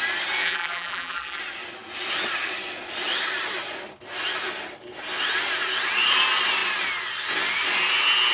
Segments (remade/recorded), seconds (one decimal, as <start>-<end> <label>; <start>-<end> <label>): 0.0-0.4 recorded; 0.4-1.4 remade; 1.4-8.3 recorded